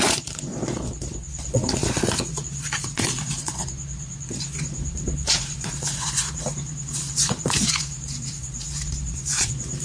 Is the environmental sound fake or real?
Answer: fake